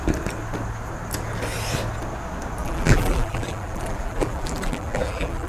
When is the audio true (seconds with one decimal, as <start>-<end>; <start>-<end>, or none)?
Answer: 0.0-2.6